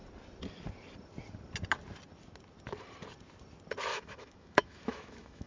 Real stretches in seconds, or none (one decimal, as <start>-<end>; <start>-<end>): 0.0-3.9